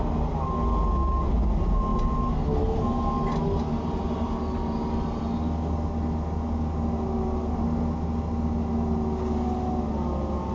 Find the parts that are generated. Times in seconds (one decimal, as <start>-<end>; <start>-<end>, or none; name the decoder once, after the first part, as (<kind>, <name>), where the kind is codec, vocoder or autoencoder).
none